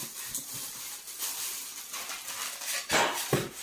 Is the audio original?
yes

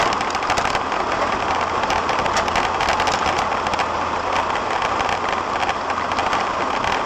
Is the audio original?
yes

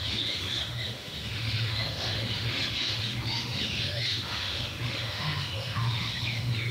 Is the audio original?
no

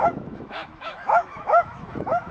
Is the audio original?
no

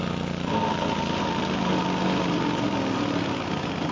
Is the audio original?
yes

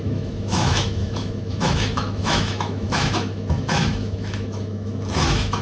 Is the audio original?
no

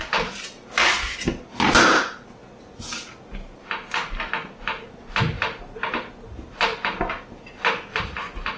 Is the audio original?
yes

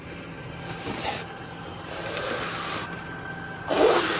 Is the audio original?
yes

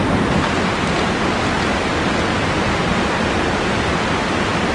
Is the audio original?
yes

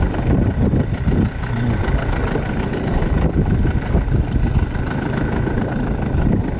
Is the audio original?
yes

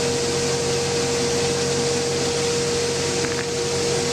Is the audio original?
yes